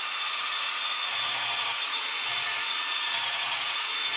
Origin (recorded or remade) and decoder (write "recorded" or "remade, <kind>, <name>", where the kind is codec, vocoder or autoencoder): remade, vocoder, Vocos